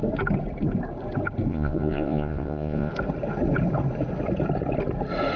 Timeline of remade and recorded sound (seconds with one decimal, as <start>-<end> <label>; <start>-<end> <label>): 0.0-1.5 recorded; 1.5-2.9 remade; 2.9-5.4 recorded